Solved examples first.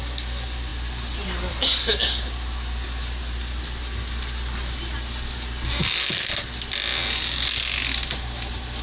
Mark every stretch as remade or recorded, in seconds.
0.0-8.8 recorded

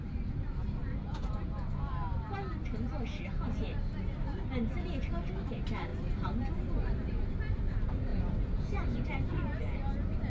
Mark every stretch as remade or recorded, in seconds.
0.0-0.8 recorded; 0.8-1.7 remade; 1.7-8.1 recorded; 8.1-8.8 remade; 8.8-10.3 recorded

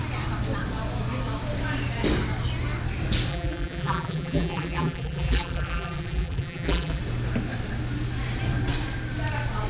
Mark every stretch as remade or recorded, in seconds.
0.0-3.3 recorded; 3.3-7.0 remade; 7.0-9.7 recorded

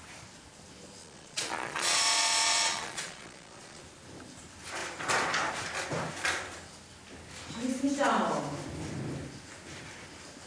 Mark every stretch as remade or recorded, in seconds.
0.0-1.0 recorded; 1.0-3.8 remade; 3.8-10.5 recorded

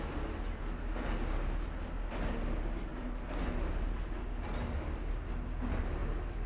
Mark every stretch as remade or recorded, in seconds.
0.0-6.5 recorded

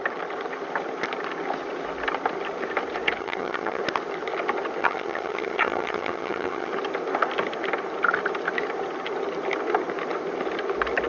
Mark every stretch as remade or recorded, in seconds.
0.0-3.2 recorded; 3.2-3.8 remade; 3.8-4.8 recorded; 4.8-6.7 remade; 6.7-11.1 recorded

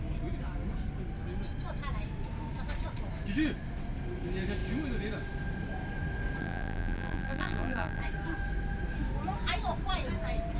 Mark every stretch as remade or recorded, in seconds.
0.0-6.4 recorded; 6.4-8.0 remade; 8.0-10.6 recorded

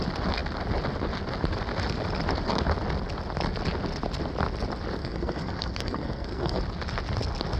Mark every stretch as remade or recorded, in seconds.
0.0-5.0 recorded; 5.0-6.6 remade; 6.6-7.6 recorded